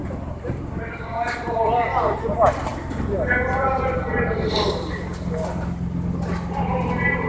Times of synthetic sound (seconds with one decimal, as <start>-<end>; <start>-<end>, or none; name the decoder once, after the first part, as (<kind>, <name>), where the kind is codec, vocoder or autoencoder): 0.0-0.7 (vocoder, BigVGAN v2)